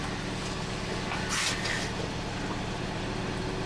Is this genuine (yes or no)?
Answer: yes